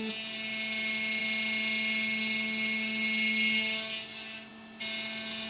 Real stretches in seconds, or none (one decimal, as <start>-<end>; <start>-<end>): 0.0-5.5